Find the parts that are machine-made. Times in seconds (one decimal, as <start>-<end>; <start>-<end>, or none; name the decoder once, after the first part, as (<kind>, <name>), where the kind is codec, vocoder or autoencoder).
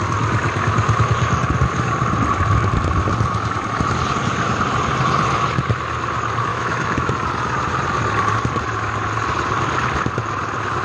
6.5-7.1 (autoencoder, DAC-VAE)